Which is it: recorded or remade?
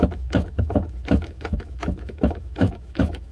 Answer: remade